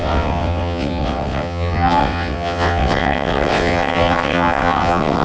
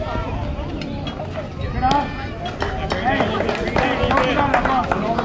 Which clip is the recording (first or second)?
second